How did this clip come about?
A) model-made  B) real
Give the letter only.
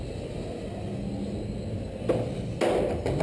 B